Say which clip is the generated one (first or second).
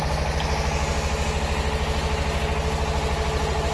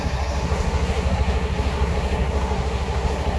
second